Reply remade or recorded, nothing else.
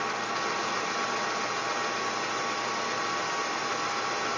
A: recorded